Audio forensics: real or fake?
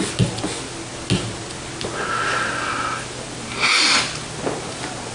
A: real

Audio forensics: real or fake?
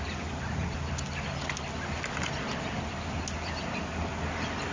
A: real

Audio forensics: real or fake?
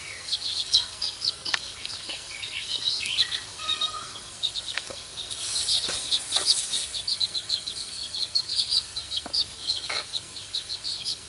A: fake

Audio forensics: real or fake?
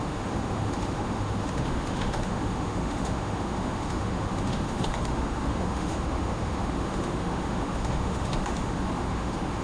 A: fake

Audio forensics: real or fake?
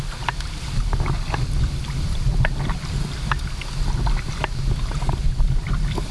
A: real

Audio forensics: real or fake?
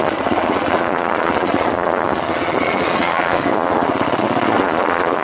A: fake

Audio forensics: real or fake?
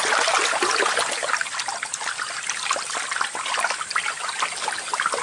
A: real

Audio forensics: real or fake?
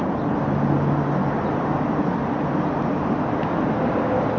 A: real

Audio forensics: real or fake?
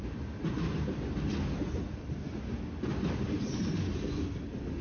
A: real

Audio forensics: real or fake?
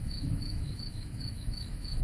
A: fake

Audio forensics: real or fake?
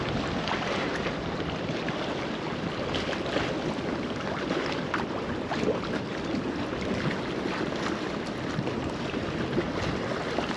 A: real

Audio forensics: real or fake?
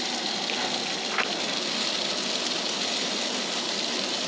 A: real